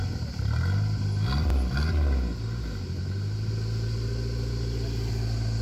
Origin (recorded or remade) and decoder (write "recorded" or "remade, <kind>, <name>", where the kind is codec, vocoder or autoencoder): recorded